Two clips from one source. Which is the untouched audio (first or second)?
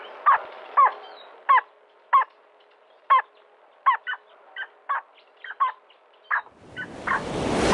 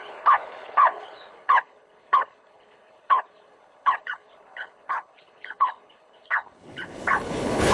first